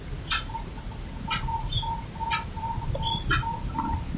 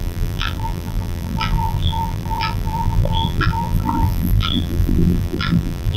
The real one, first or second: first